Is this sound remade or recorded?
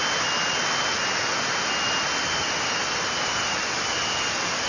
recorded